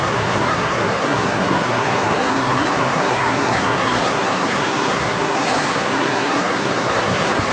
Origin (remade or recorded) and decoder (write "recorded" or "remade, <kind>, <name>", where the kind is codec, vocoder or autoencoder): remade, codec, SNAC